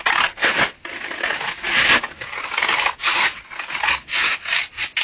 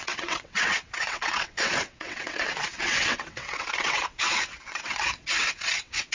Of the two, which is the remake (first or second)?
second